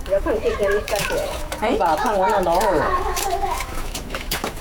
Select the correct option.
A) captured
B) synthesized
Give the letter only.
B